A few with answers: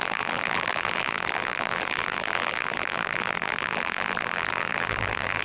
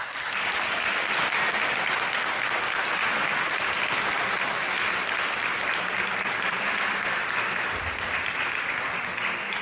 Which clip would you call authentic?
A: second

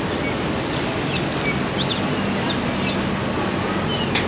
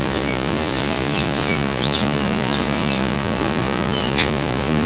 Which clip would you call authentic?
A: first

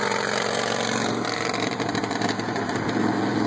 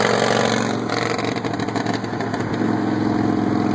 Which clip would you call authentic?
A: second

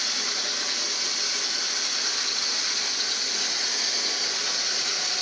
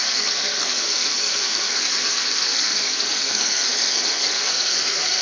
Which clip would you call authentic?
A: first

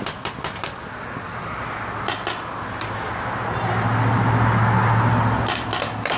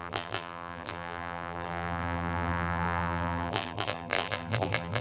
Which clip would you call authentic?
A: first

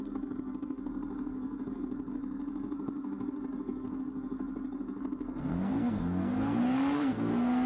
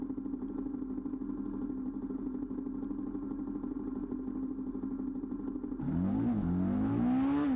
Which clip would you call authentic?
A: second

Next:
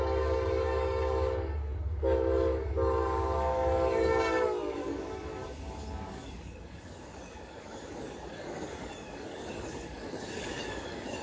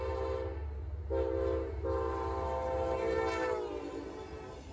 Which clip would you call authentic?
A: second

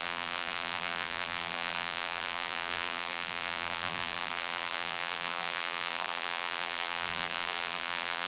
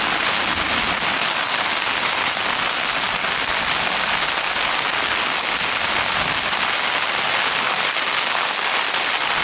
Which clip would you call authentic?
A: second